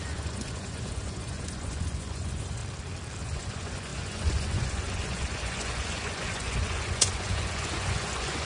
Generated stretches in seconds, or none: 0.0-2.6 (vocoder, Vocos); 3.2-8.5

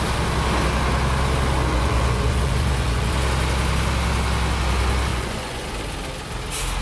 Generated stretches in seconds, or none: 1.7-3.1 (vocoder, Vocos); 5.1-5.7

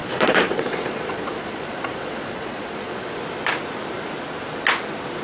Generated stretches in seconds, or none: 0.0-3.1 (vocoder, Vocos)